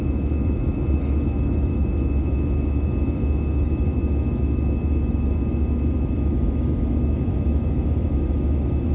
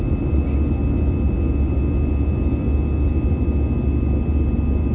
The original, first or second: second